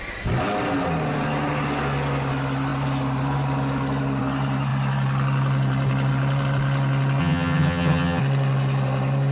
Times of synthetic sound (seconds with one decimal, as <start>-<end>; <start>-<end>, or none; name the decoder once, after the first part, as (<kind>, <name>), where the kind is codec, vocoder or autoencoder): 7.2-8.2 (vocoder, HiFi-GAN)